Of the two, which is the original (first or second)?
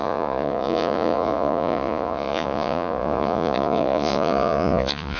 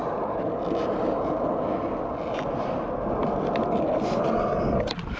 second